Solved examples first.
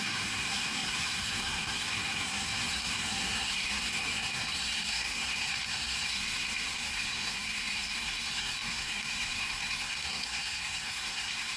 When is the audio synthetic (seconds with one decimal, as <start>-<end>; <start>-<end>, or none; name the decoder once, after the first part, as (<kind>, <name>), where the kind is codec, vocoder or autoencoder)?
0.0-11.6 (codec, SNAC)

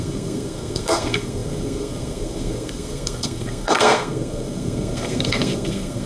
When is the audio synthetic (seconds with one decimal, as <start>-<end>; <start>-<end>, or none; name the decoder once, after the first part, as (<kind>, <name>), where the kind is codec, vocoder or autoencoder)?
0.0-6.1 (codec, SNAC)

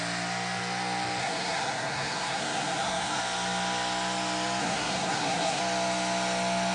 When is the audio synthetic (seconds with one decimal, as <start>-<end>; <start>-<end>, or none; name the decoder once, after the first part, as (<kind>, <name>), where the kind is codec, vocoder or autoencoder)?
1.2-3.2 (codec, SNAC); 4.6-5.6

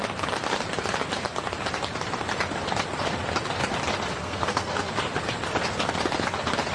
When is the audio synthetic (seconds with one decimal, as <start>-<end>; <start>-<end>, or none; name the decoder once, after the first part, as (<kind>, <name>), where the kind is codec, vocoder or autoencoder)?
4.2-4.9 (codec, SNAC)